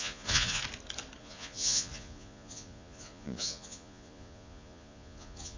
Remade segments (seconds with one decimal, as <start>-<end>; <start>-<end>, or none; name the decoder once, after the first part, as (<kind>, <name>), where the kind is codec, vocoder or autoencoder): 0.0-0.6 (vocoder, Vocos); 1.2-5.6